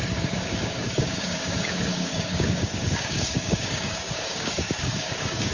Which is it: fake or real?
fake